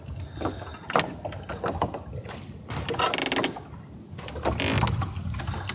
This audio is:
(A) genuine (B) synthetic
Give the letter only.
A